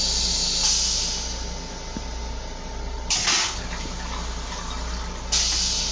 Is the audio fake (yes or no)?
no